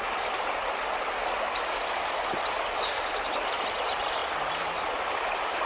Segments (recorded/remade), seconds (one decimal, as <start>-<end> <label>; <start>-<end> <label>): 0.0-5.7 recorded